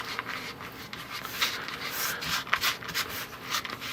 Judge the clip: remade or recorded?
recorded